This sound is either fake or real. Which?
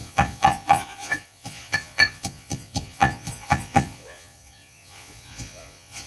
fake